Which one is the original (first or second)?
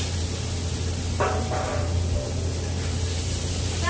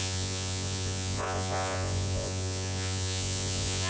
first